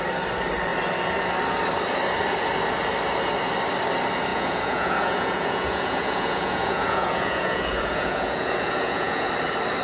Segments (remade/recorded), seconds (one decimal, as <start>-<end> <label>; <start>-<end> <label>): 0.0-4.3 recorded; 4.3-9.3 remade; 9.3-9.8 recorded